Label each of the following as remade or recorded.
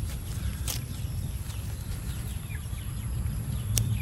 remade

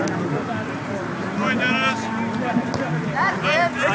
recorded